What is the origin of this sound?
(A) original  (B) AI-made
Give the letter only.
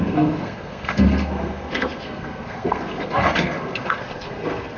B